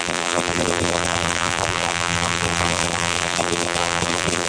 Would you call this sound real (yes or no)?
no